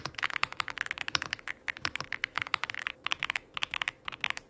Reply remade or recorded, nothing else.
remade